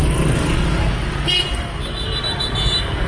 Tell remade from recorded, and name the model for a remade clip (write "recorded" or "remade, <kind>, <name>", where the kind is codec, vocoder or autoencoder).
recorded